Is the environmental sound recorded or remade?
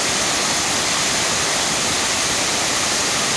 recorded